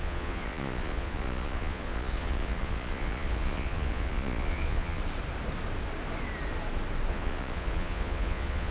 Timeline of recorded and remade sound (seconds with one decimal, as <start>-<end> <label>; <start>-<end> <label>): 0.0-5.0 remade; 5.0-7.1 recorded; 7.1-8.7 remade

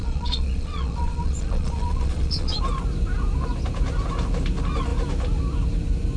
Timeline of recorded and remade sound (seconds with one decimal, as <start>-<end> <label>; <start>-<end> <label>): 0.0-2.6 remade; 2.6-6.2 recorded

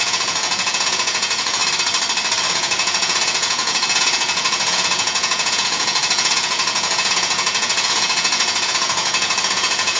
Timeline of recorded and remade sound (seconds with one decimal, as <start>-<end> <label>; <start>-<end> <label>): 0.0-1.6 remade; 1.6-2.5 recorded; 2.5-10.0 remade

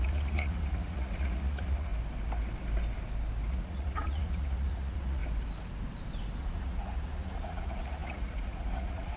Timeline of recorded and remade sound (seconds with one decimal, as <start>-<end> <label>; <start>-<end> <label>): 0.0-1.9 remade; 1.9-3.5 recorded; 3.5-5.2 remade; 5.2-6.4 recorded; 6.4-9.2 remade

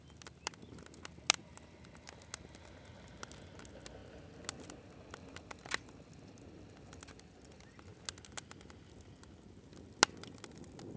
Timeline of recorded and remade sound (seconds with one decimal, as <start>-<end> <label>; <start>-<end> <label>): 0.0-11.0 recorded

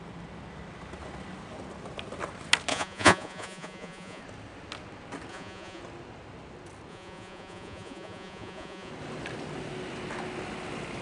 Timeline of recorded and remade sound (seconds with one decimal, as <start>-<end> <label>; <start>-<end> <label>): 0.0-2.7 recorded; 2.7-4.2 remade; 4.2-5.3 recorded; 5.3-5.8 remade; 5.8-6.9 recorded; 6.9-8.9 remade; 8.9-11.0 recorded